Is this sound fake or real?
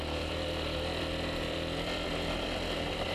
fake